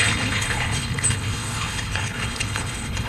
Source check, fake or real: fake